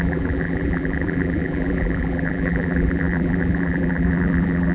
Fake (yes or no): yes